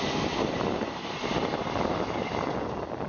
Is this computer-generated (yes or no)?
no